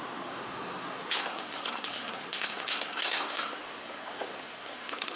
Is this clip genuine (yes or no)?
no